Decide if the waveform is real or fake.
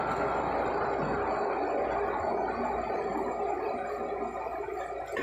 real